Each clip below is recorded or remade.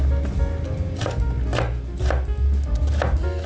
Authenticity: recorded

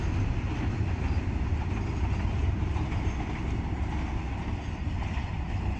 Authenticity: recorded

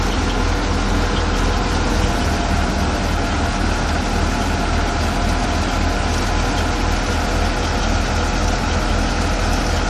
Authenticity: recorded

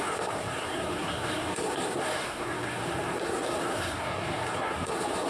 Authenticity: remade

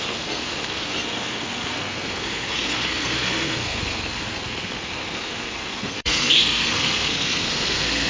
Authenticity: remade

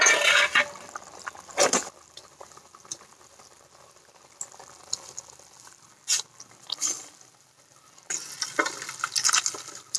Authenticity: recorded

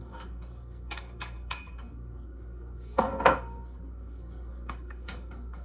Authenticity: remade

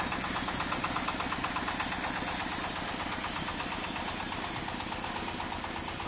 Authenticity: recorded